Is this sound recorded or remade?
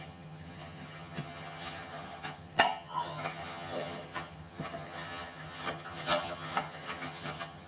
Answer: remade